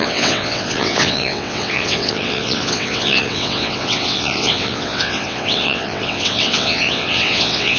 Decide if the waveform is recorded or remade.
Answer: remade